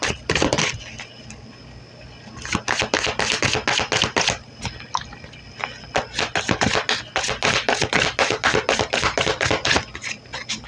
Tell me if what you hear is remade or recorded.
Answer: recorded